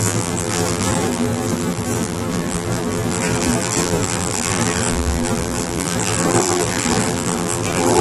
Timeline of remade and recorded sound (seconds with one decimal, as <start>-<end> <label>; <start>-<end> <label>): 0.0-8.0 remade